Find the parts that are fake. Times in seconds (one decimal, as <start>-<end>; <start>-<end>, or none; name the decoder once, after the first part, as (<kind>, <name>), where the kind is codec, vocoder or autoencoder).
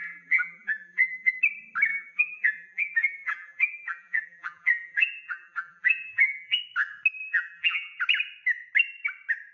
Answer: 0.0-1.3 (vocoder, BigVGAN v2); 1.9-6.6; 7.2-8.0